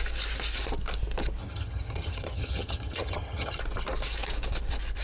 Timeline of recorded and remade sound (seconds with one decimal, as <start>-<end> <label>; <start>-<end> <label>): 0.0-1.4 recorded; 1.4-3.6 remade; 3.6-5.0 recorded